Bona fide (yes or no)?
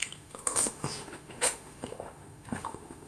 no